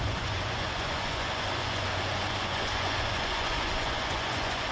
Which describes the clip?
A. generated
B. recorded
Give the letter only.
A